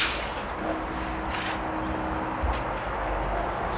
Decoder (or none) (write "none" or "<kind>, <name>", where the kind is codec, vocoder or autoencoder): none